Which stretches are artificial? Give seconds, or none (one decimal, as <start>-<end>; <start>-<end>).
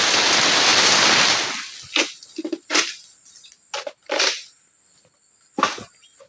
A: none